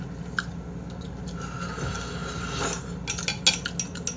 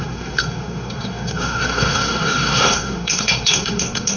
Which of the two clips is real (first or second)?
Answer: first